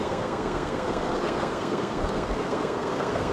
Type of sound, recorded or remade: remade